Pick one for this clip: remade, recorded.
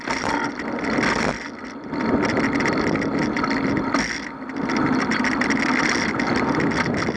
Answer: recorded